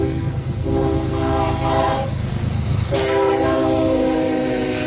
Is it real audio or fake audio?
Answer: fake